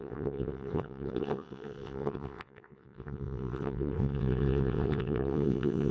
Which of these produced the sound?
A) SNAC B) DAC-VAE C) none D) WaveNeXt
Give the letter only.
D